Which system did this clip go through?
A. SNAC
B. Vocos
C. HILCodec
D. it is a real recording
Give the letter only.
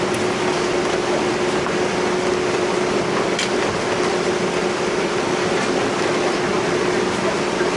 D